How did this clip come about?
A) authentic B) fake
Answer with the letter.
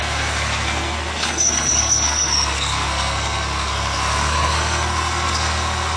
B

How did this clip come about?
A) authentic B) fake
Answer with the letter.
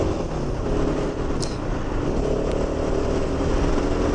A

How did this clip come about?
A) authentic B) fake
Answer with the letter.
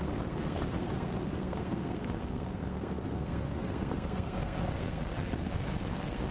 B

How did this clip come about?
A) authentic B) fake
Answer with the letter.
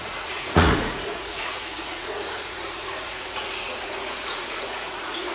B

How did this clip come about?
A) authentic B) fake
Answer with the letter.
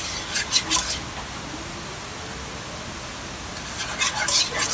A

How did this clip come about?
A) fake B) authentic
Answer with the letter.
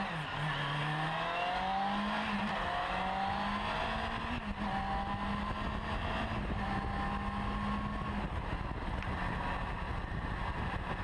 B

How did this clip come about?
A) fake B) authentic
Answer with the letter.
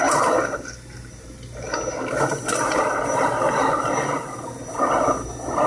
B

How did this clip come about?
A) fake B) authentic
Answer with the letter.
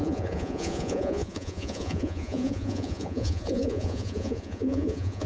A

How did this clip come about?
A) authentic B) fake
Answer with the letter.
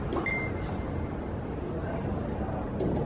A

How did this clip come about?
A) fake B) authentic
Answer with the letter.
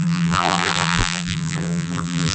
A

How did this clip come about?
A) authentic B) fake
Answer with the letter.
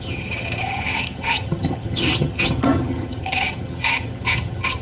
B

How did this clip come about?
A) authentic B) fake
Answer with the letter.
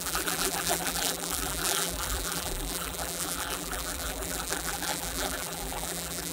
B